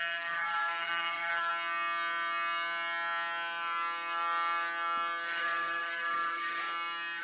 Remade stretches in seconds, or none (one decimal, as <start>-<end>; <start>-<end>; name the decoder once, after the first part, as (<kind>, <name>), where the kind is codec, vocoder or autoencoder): 0.0-1.5 (codec, SNAC); 5.4-6.6

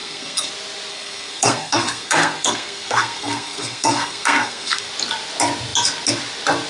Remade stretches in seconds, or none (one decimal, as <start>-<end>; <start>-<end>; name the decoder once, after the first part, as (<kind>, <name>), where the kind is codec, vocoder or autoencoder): 0.0-0.5 (codec, SNAC); 0.9-4.9

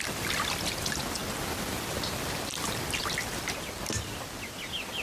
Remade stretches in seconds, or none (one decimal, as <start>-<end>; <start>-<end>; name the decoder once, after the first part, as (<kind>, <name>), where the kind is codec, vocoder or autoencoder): none